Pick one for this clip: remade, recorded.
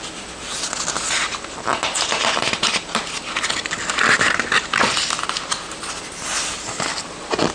recorded